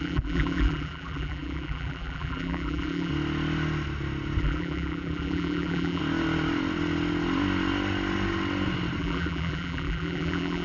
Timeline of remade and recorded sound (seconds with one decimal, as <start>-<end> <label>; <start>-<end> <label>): 0.0-3.1 remade; 3.1-4.4 recorded; 4.4-6.0 remade; 6.0-9.0 recorded; 9.0-10.6 remade

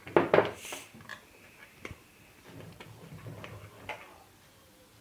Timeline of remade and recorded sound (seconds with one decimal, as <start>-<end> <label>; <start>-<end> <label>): 0.0-5.0 recorded

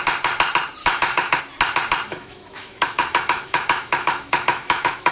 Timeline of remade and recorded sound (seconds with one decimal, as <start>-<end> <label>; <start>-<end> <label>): 0.0-0.8 recorded; 0.8-1.4 remade; 1.4-2.1 recorded; 2.1-5.1 remade

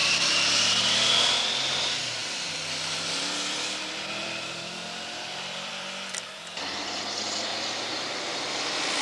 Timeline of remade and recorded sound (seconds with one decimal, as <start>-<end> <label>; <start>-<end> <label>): 0.0-0.9 recorded; 0.9-7.5 remade; 7.5-8.2 recorded; 8.2-9.0 remade

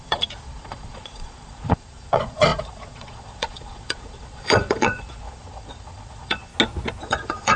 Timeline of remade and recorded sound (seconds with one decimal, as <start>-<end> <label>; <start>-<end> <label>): 0.0-6.5 remade; 6.5-7.0 recorded; 7.0-7.6 remade

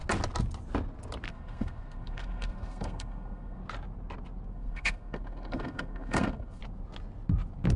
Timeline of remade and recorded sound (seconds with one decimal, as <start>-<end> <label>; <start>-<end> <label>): 0.0-1.3 recorded; 1.3-3.6 remade; 3.6-4.5 recorded; 4.5-6.6 remade; 6.6-7.8 recorded

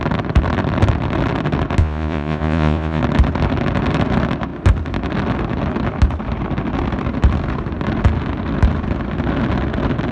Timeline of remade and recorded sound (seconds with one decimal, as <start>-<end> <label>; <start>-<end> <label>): 0.0-1.8 recorded; 1.8-3.0 remade; 3.0-10.1 recorded

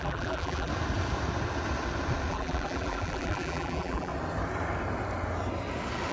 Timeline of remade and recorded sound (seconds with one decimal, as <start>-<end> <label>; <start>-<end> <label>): 0.0-0.7 remade; 0.7-2.3 recorded; 2.3-4.1 remade; 4.1-6.1 recorded